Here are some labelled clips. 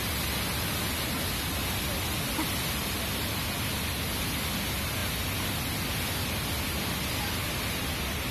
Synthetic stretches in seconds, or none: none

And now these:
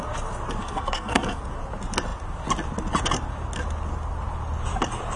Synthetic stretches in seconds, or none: 0.6-1.4 (codec, SNAC)

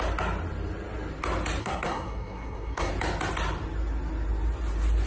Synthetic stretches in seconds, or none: 1.6-2.9 (codec, SNAC)

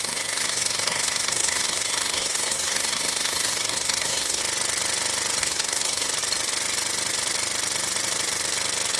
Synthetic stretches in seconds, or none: 0.0-4.4 (codec, SNAC); 5.4-6.1

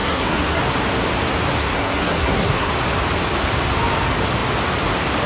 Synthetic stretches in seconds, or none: 0.0-0.6 (codec, SNAC); 1.6-2.7

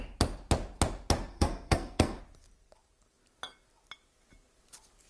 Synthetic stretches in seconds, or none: 1.3-2.2 (codec, SNAC)